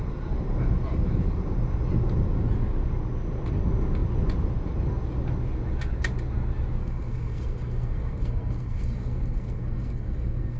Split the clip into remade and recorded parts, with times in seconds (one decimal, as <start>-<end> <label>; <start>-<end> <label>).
0.0-6.8 recorded; 6.8-10.6 remade